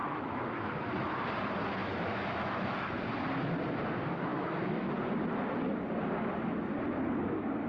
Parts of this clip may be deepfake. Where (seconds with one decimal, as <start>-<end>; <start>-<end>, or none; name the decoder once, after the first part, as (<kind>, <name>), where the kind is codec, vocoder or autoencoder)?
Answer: 0.0-0.7 (autoencoder, DAC-VAE); 1.8-3.0; 4.3-4.9